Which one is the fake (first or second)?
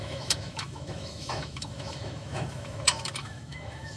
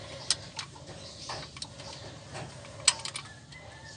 first